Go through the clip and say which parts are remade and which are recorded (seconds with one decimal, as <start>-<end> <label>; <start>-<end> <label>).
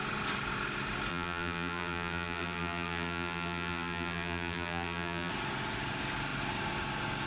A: 0.0-1.1 recorded; 1.1-5.3 remade; 5.3-7.3 recorded